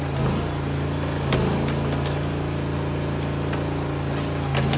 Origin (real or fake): real